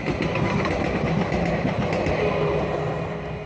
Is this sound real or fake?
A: real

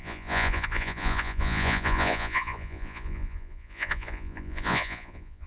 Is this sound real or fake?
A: fake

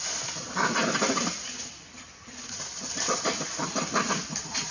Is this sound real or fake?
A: real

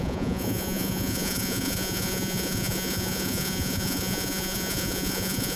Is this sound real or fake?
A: fake